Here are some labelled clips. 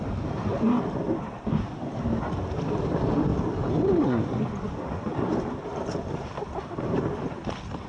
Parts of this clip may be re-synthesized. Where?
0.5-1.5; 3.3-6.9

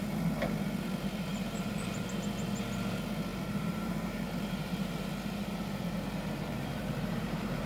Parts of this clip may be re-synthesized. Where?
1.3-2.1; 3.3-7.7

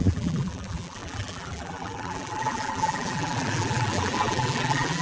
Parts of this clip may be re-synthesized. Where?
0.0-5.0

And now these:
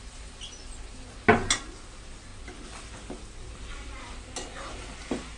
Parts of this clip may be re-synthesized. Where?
none

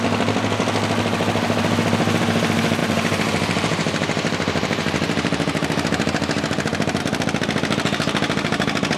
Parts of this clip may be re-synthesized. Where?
2.8-7.0